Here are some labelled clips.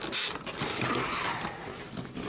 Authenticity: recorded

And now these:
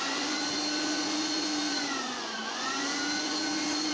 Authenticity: remade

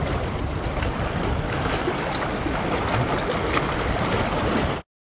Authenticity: recorded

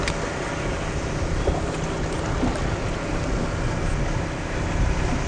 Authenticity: recorded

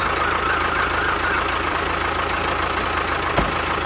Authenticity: recorded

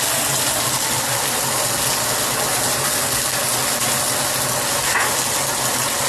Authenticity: recorded